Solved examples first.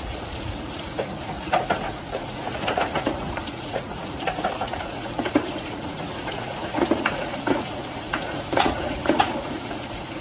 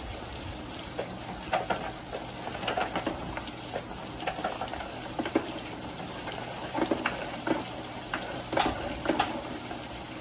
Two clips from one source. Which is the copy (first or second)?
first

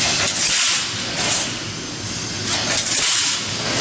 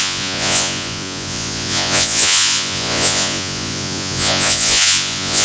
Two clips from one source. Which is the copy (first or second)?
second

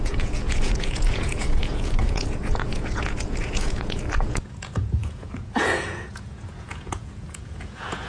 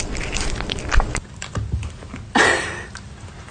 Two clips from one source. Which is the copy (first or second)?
first